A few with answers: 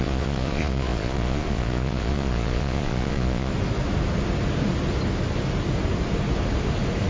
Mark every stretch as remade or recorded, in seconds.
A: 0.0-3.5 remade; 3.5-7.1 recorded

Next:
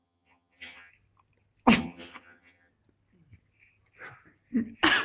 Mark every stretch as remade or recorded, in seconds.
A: 0.0-0.9 remade; 0.9-1.8 recorded; 1.8-2.7 remade; 2.7-5.0 recorded